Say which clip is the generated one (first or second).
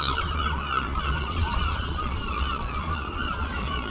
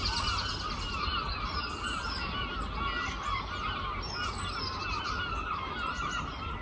first